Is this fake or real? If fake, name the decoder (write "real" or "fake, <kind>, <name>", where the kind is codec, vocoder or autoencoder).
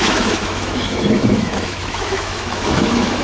fake, autoencoder, DAC-VAE